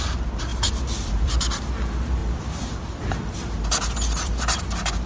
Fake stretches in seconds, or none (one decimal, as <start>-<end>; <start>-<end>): 0.5-1.6; 2.2-4.6